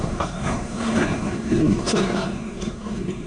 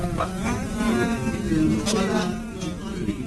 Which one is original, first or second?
second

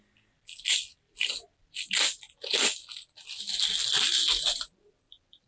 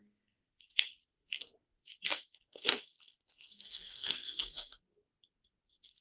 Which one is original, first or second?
first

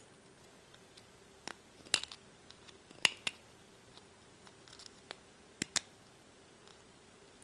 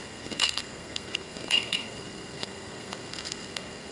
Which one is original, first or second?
first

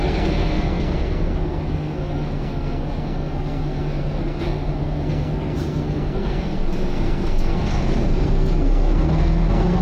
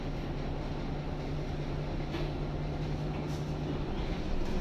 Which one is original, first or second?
second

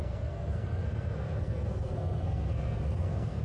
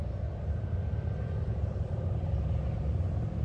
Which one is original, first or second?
second